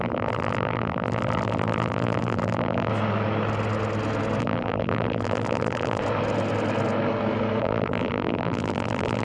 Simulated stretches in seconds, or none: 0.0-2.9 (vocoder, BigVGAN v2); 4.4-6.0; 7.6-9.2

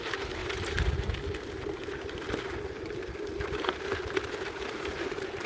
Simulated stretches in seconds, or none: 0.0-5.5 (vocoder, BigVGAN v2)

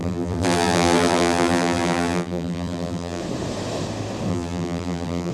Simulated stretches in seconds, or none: 0.0-3.2 (vocoder, BigVGAN v2); 4.3-5.3